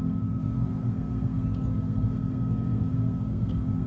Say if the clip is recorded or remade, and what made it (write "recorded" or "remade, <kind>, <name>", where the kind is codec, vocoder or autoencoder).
remade, codec, SNAC